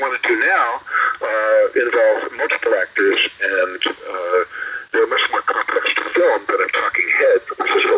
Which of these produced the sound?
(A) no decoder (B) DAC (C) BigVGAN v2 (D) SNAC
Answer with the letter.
A